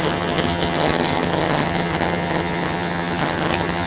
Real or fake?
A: fake